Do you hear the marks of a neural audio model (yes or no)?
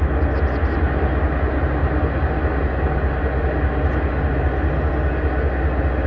no